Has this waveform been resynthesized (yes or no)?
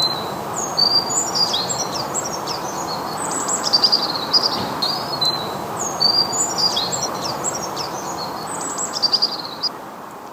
yes